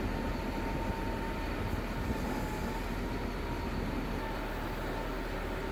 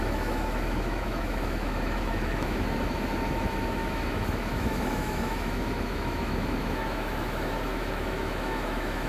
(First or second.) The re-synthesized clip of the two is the second